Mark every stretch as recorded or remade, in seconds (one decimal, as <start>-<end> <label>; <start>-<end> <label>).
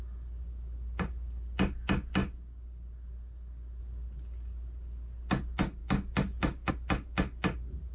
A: 0.0-7.9 recorded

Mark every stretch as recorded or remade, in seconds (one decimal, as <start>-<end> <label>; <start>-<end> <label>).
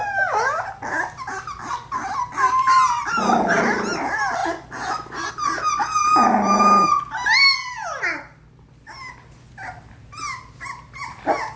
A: 0.0-4.4 recorded; 4.4-5.3 remade; 5.3-11.6 recorded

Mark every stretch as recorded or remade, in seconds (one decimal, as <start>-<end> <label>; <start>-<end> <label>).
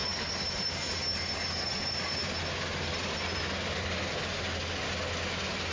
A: 0.0-5.7 recorded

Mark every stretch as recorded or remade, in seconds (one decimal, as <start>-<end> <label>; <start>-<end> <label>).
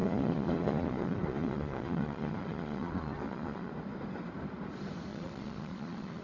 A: 0.0-3.7 remade; 3.7-5.1 recorded; 5.1-6.2 remade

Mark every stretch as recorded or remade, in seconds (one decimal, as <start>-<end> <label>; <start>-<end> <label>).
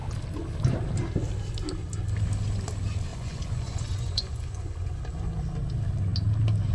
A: 0.0-3.1 recorded; 3.1-5.0 remade; 5.0-6.7 recorded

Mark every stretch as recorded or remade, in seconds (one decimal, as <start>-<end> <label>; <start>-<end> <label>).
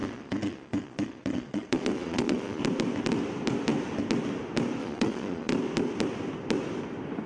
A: 0.0-2.6 remade; 2.6-4.8 recorded; 4.8-5.5 remade; 5.5-7.3 recorded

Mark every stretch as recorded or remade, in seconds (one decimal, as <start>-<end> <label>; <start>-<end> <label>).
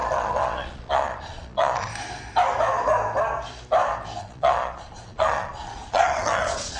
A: 0.0-1.9 remade; 1.9-4.2 recorded; 4.2-6.8 remade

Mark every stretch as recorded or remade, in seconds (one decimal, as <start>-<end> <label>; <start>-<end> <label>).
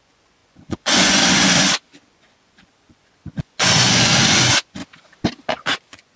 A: 0.0-4.8 remade; 4.8-5.5 recorded; 5.5-6.2 remade